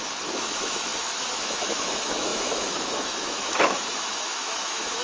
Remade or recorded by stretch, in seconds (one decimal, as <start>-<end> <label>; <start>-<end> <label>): 0.0-5.0 remade